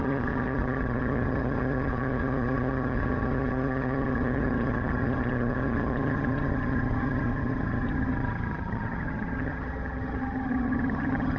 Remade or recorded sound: remade